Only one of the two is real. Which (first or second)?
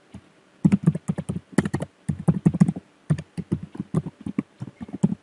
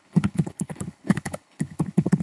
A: first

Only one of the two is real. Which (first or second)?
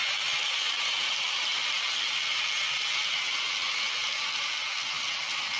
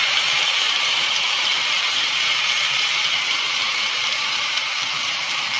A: first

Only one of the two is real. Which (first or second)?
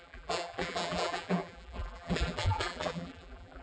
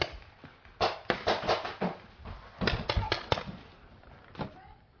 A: second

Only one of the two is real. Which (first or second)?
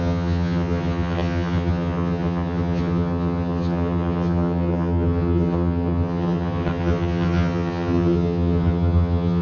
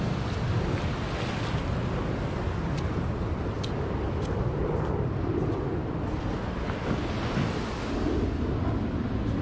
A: second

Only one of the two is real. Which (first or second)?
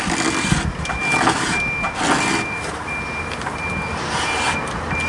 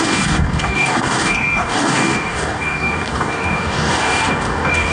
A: first